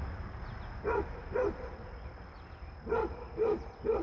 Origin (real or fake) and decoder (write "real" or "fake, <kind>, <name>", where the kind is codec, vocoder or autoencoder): real